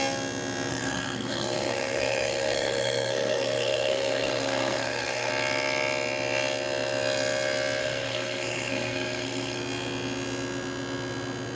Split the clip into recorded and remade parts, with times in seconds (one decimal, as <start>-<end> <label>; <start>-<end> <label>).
0.0-0.7 recorded; 0.7-5.3 remade; 5.3-7.8 recorded; 7.8-9.6 remade; 9.6-11.6 recorded